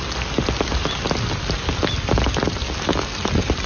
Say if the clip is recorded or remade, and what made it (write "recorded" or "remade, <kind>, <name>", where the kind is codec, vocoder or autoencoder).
recorded